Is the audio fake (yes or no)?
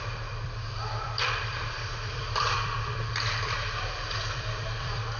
yes